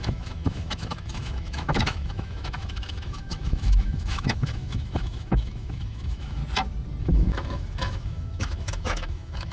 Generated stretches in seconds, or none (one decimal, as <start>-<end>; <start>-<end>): 0.0-6.4; 7.0-9.5